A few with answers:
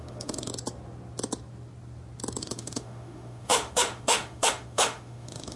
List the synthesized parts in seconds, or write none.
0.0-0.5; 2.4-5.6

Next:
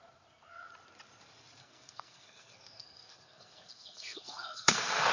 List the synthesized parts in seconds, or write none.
1.6-5.1

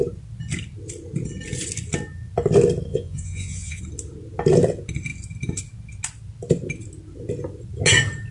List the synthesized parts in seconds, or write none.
2.9-3.8

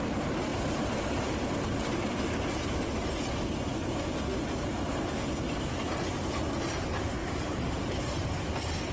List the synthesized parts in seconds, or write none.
0.5-2.6; 7.2-8.3

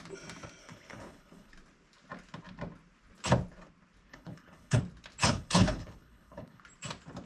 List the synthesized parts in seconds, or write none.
0.6-1.5; 4.1-4.8; 5.2-6.6

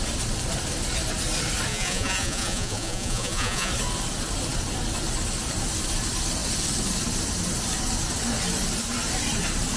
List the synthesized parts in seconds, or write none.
1.7-3.7

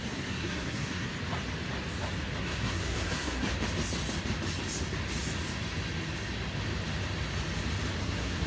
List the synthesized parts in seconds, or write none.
0.0-1.1; 2.4-3.5; 8.0-8.5

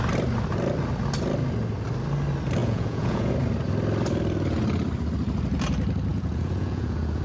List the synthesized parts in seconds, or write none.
2.6-3.3; 6.1-7.2